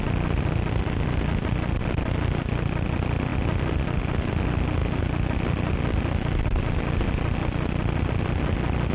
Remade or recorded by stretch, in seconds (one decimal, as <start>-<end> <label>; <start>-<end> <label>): 0.0-8.9 recorded